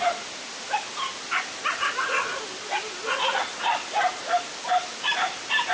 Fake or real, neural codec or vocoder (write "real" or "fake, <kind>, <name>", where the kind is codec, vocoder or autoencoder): real